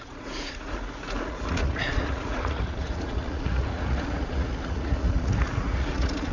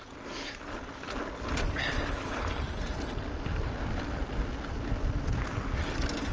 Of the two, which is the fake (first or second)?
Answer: first